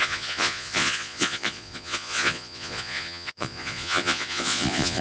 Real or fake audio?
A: fake